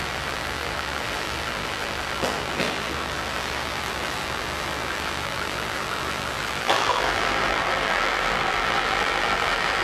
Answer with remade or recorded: remade